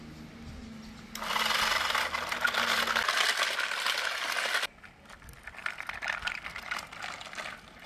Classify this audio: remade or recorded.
recorded